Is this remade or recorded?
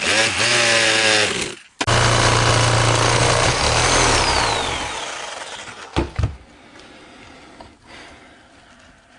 recorded